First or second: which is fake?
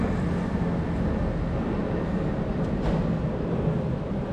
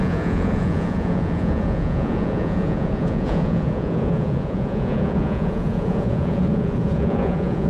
second